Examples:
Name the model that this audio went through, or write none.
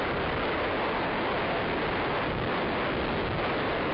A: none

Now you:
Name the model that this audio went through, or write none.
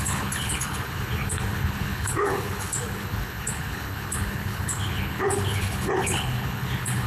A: codec, HILCodec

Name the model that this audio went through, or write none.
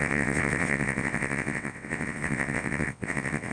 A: vocoder, WaveNeXt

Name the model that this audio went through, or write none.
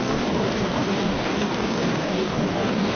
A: codec, DAC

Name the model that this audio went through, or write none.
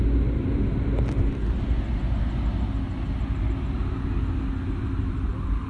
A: none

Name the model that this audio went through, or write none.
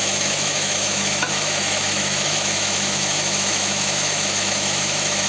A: autoencoder, DAC-VAE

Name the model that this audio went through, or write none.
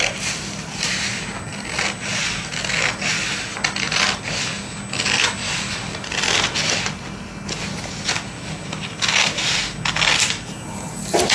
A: none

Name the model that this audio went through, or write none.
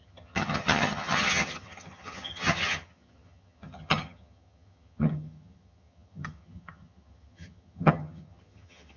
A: vocoder, HiFi-GAN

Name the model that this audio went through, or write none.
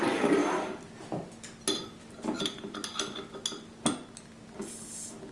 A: none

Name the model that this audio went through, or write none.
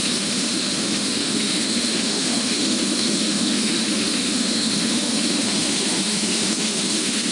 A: autoencoder, DAC-VAE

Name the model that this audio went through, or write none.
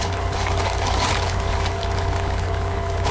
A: codec, DAC